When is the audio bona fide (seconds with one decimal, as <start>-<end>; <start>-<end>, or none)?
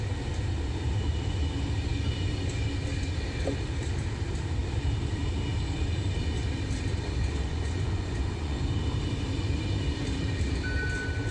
0.0-7.2; 8.6-11.3